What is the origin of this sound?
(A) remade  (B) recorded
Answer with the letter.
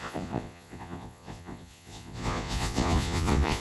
A